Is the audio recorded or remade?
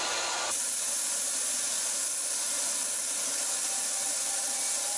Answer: recorded